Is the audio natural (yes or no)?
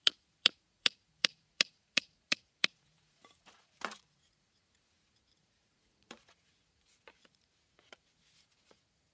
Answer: no